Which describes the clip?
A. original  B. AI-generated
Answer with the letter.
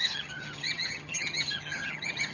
B